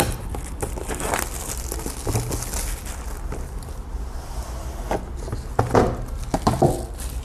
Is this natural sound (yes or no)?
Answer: yes